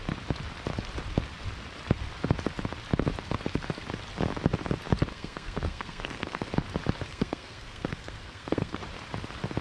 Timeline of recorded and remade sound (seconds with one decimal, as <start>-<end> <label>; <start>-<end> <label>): 0.0-5.1 recorded; 5.1-6.5 remade; 6.5-7.1 recorded; 7.1-8.8 remade; 8.8-9.6 recorded